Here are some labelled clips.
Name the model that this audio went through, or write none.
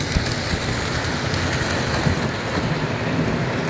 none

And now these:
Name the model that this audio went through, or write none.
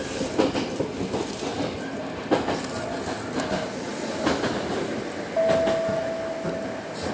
none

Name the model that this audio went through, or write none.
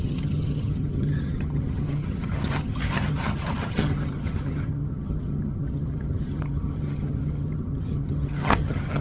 vocoder, HiFi-GAN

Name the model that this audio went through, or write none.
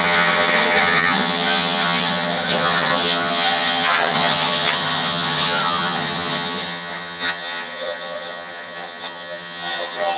vocoder, HiFi-GAN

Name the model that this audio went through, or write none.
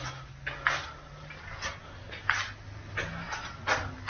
none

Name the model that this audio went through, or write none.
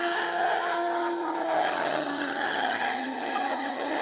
vocoder, HiFi-GAN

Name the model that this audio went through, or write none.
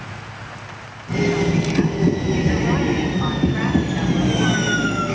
none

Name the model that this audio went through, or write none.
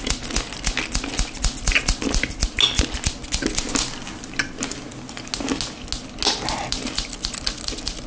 none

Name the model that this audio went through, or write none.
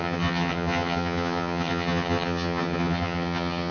vocoder, HiFi-GAN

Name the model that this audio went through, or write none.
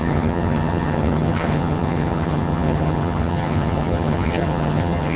vocoder, HiFi-GAN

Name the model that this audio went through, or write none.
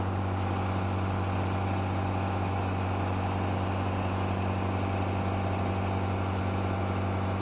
none